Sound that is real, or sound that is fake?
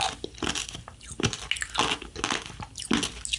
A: real